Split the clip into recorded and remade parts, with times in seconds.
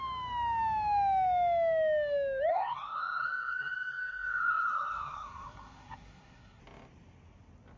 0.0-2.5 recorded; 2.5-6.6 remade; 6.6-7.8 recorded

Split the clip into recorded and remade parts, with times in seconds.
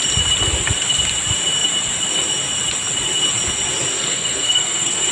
0.0-3.9 recorded; 3.9-5.1 remade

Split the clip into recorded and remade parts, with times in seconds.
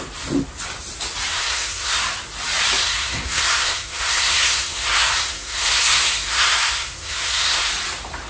0.0-1.3 recorded; 1.3-2.0 remade; 2.0-2.8 recorded; 2.8-7.7 remade; 7.7-8.3 recorded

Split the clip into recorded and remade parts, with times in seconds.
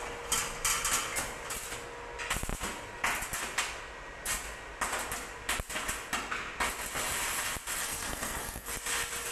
0.0-7.8 recorded; 7.8-8.7 remade; 8.7-9.3 recorded